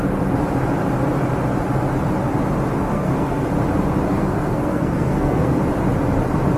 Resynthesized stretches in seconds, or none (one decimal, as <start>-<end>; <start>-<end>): 2.9-3.5; 4.1-5.6

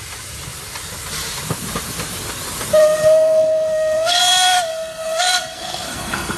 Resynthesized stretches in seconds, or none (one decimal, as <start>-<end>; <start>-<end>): 2.8-4.2; 4.7-6.4